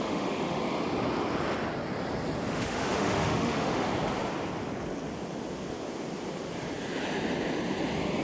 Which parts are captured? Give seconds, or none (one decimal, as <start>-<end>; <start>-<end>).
0.6-2.5; 3.9-8.2